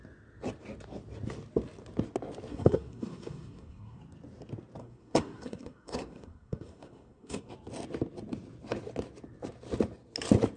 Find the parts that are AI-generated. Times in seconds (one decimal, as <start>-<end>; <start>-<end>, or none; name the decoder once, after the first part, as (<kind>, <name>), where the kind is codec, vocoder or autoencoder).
2.5-4.0 (codec, SNAC); 4.8-7.5

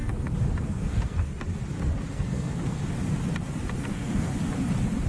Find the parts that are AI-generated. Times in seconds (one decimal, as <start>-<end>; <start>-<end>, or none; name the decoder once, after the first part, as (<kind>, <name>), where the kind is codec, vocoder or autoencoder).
0.6-1.3 (codec, SNAC); 2.1-2.8; 3.8-4.3

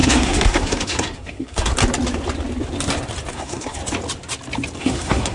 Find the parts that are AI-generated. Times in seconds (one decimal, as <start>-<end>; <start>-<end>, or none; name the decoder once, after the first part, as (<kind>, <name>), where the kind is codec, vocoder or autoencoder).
0.0-1.7 (codec, SNAC); 3.3-3.8; 4.8-5.3

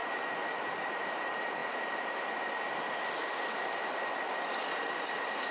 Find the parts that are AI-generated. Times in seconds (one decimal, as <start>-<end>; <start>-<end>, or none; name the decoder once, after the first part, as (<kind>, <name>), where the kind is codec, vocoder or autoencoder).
none